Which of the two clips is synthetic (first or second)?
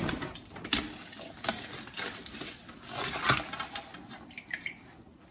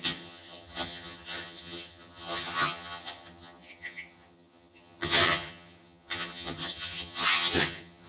second